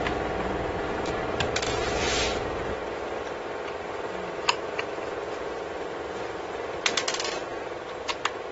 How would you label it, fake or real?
real